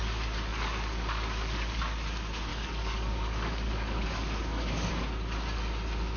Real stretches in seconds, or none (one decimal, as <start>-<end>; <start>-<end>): 0.0-0.5; 1.8-2.5; 4.9-6.2